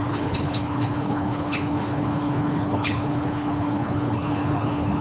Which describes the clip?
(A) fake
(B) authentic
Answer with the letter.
A